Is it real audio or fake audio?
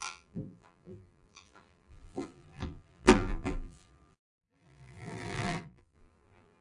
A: fake